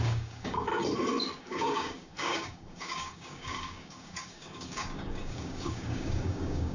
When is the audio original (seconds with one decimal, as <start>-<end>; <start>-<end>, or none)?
0.7-1.4